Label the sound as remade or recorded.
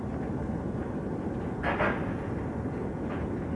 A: recorded